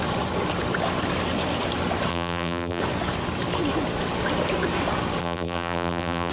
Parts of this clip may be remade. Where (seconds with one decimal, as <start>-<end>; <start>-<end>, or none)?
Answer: 2.1-2.8; 5.2-6.3

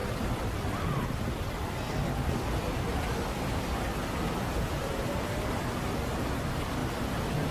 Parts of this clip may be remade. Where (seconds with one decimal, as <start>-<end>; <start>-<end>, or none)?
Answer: 0.0-6.8